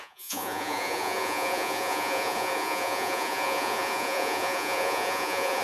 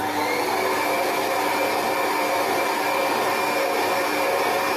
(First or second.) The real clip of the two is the second